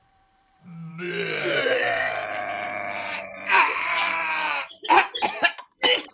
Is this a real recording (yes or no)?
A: no